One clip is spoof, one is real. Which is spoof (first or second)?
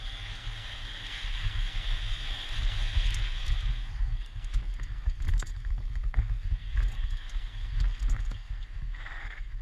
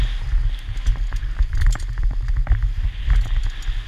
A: first